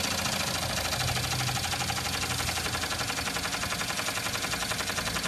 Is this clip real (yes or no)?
yes